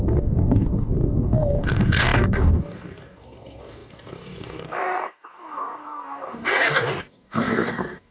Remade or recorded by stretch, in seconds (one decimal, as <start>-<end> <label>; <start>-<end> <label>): 0.0-8.1 remade